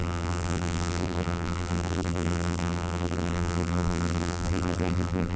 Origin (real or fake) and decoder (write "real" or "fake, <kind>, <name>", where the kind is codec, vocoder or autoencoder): fake, vocoder, BigVGAN v2